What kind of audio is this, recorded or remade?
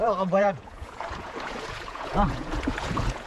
remade